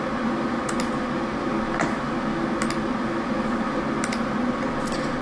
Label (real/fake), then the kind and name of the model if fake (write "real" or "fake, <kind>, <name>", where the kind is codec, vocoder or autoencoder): real